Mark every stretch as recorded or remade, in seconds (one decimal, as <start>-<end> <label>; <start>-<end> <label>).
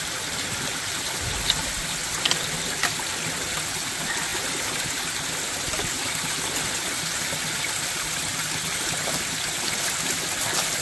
0.0-10.8 recorded